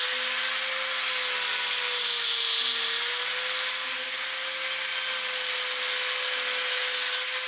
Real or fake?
real